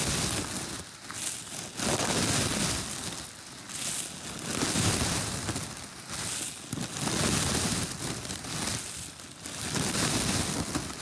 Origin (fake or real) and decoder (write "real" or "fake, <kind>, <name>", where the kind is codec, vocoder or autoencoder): real